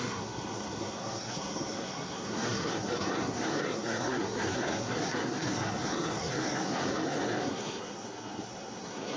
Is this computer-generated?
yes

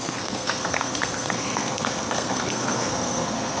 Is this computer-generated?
yes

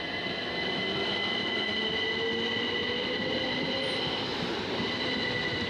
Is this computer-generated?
no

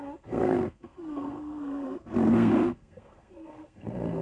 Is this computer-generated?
yes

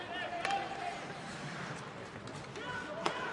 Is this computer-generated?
no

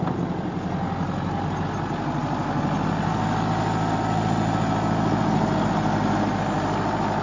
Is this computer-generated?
no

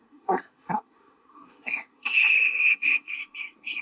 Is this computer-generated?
yes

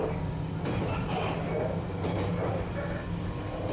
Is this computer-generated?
no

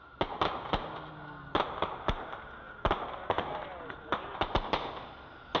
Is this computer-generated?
no